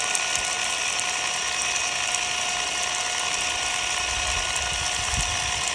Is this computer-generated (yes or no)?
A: no